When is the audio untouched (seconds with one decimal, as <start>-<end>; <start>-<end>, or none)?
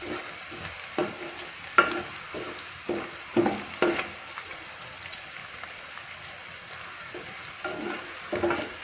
0.0-8.8